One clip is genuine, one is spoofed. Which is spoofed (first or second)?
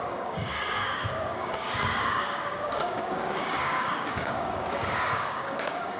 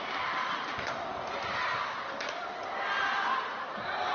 first